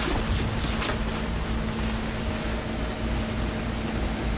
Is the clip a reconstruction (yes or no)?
no